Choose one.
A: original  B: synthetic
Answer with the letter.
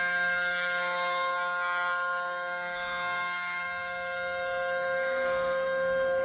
B